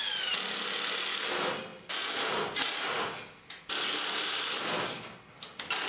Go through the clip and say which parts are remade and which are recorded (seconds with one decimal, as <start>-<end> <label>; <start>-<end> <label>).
0.0-5.9 recorded

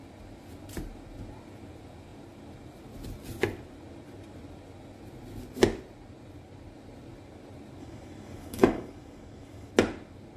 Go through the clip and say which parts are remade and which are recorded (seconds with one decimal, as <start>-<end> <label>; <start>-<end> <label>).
0.0-7.8 recorded; 7.8-9.7 remade; 9.7-10.4 recorded